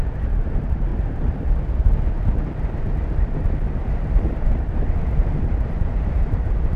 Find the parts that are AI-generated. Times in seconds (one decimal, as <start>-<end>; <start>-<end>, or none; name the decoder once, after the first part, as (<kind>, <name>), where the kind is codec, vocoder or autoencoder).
0.0-0.9 (vocoder, BigVGAN v2); 3.7-6.8